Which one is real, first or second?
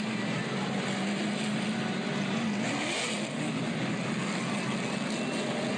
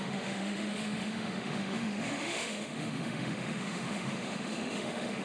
first